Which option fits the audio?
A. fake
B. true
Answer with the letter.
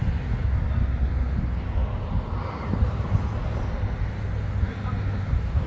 B